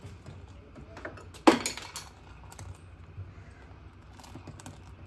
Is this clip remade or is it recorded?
recorded